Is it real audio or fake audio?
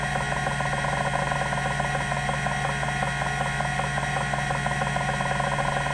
real